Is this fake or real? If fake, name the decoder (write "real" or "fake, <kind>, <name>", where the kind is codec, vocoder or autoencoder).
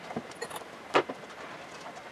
real